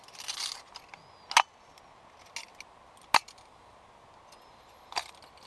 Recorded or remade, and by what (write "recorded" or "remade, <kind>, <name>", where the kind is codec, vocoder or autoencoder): recorded